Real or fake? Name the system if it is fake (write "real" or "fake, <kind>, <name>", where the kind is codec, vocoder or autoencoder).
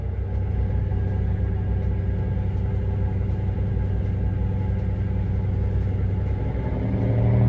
real